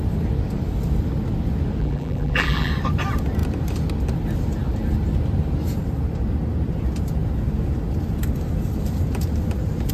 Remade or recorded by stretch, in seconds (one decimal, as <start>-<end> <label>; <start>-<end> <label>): 0.0-1.8 recorded; 1.8-2.7 remade; 2.7-9.9 recorded